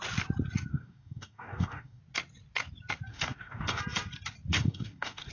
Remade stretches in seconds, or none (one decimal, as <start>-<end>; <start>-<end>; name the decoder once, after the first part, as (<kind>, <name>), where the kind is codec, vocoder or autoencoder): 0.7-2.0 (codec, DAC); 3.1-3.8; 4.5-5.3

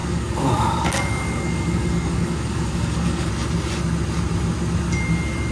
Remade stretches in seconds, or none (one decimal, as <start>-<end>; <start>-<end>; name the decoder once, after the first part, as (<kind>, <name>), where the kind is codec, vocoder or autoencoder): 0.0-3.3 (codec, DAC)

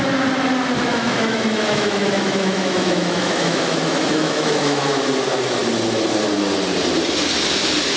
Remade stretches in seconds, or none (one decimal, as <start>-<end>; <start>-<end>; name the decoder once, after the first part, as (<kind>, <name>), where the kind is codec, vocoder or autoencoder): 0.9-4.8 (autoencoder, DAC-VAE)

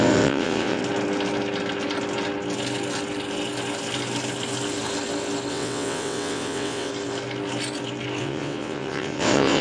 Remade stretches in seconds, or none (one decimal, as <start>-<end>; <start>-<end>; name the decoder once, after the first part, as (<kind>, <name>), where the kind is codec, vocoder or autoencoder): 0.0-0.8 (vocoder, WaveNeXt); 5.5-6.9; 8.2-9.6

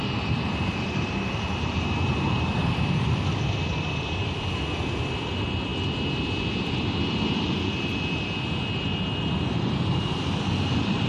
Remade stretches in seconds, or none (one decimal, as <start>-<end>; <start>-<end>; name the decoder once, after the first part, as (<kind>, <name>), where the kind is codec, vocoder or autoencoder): 0.0-5.7 (vocoder, BigVGAN v2); 6.6-7.9; 9.2-11.1

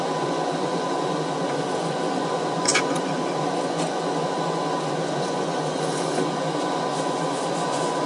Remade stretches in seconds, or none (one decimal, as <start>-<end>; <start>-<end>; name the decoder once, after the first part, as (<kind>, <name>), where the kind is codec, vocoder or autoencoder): 0.0-8.1 (vocoder, Vocos)